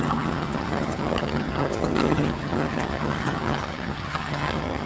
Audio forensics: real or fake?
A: fake